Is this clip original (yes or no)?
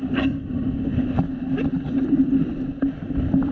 yes